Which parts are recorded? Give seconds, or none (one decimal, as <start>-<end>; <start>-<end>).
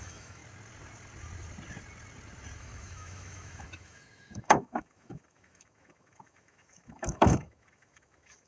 0.4-2.6